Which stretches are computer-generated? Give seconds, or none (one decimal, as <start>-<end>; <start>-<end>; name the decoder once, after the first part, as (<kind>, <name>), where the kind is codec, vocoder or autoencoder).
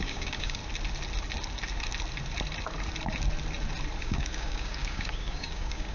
0.0-0.6 (codec, DAC); 4.0-5.9